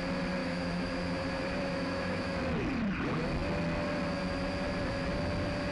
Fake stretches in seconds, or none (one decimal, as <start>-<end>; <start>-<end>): 0.4-0.9; 1.7-2.4